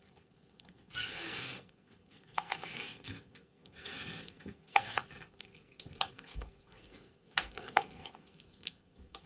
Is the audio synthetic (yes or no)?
yes